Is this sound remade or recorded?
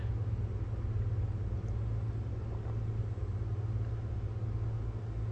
recorded